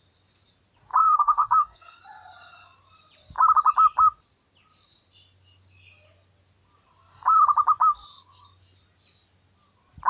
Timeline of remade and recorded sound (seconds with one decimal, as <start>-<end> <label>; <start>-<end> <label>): 0.0-1.0 recorded; 1.0-2.0 remade; 2.0-10.1 recorded